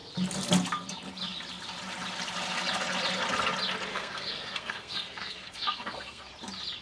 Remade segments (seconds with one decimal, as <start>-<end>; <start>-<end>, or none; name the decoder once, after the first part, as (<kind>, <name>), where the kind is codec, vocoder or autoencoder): 3.9-6.3 (codec, SNAC)